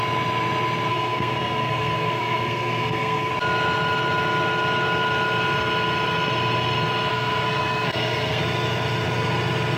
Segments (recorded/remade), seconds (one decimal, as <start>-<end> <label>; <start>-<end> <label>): 0.0-0.9 recorded; 0.9-3.3 remade; 3.3-7.1 recorded; 7.1-8.4 remade; 8.4-9.8 recorded